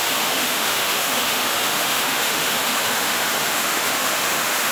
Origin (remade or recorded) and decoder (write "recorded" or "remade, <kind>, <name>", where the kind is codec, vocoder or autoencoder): remade, autoencoder, DAC-VAE